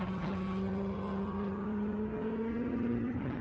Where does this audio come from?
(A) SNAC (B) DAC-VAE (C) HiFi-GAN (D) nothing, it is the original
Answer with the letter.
C